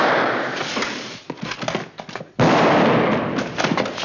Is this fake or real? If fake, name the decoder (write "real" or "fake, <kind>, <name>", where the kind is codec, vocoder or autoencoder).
real